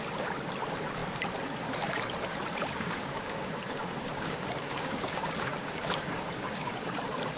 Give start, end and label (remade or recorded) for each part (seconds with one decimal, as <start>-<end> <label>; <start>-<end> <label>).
0.0-2.6 recorded; 2.6-7.0 remade; 7.0-7.4 recorded